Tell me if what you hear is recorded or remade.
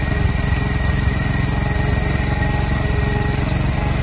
recorded